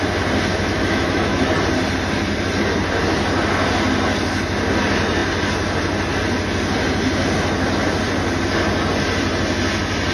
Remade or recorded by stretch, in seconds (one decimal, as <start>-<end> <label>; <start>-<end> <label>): 0.0-0.5 recorded; 0.5-1.5 remade; 1.5-10.1 recorded